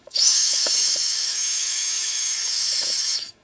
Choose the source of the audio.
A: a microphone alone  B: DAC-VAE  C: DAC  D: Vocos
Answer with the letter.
B